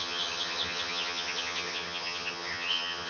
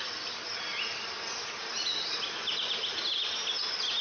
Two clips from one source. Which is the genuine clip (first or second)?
second